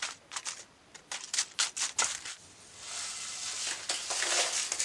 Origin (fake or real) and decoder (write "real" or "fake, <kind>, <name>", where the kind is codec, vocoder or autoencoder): real